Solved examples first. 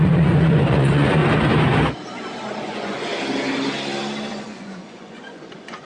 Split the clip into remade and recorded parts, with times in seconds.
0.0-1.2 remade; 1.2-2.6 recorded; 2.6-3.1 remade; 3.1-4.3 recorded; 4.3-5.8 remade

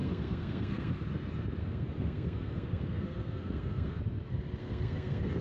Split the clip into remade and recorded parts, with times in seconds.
0.0-0.9 remade; 0.9-1.6 recorded; 1.6-4.0 remade; 4.0-4.6 recorded; 4.6-5.4 remade

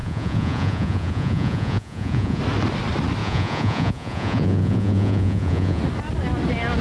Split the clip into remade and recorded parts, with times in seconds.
0.0-2.4 remade; 2.4-3.2 recorded; 3.2-5.8 remade; 5.8-6.8 recorded

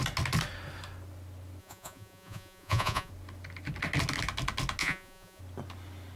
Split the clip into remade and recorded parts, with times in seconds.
0.0-1.6 recorded; 1.6-3.1 remade; 3.1-4.8 recorded; 4.8-5.4 remade; 5.4-6.2 recorded